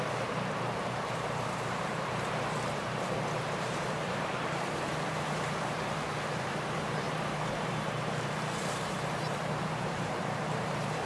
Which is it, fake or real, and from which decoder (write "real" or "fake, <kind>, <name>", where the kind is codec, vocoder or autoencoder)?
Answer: fake, vocoder, BigVGAN v2